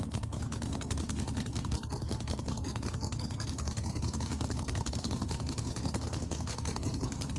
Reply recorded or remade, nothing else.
remade